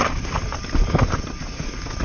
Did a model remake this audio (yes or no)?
no